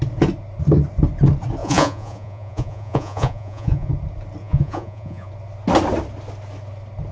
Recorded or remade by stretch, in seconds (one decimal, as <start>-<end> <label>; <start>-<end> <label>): 0.0-1.6 recorded; 1.6-3.9 remade; 3.9-4.4 recorded; 4.4-5.3 remade; 5.3-7.1 recorded

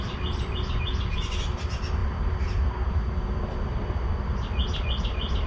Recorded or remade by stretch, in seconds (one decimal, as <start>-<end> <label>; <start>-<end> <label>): 0.0-5.5 recorded

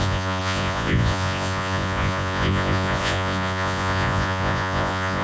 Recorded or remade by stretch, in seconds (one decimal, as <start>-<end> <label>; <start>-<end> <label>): 0.0-5.2 remade

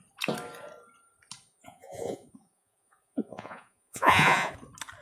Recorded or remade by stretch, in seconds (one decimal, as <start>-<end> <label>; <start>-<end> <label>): 0.0-1.5 recorded; 1.5-4.5 remade; 4.5-5.0 recorded

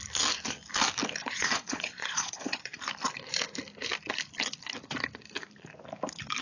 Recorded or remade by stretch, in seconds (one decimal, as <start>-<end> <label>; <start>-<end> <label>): 0.0-1.2 recorded; 1.2-2.8 remade; 2.8-6.4 recorded

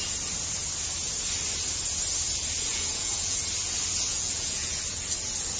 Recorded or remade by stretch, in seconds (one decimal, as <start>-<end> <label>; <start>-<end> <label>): 0.0-2.7 recorded; 2.7-3.4 remade; 3.4-4.1 recorded; 4.1-4.8 remade; 4.8-5.6 recorded

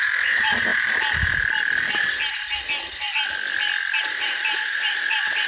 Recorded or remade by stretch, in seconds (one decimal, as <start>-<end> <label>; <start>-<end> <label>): 0.0-0.7 remade; 0.7-4.0 recorded; 4.0-5.5 remade

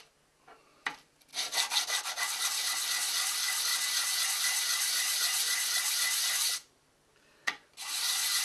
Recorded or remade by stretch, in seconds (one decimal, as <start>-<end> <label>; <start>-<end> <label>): 0.0-3.7 recorded; 3.7-4.2 remade; 4.2-7.4 recorded; 7.4-8.4 remade